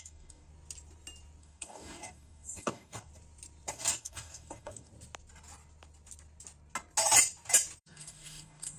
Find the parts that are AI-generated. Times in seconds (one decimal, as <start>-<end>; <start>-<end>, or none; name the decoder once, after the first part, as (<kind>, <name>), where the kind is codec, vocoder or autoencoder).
0.0-0.5 (codec, DAC); 1.4-3.1; 3.7-4.9; 7.8-8.8